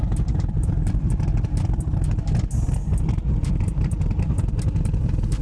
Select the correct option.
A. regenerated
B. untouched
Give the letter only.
B